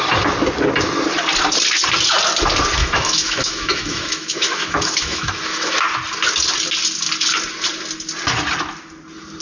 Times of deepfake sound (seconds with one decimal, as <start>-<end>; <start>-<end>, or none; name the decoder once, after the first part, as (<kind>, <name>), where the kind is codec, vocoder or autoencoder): 2.8-5.8 (autoencoder, DAC-VAE)